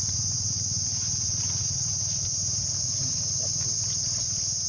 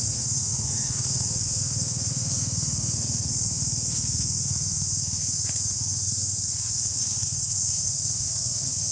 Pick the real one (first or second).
first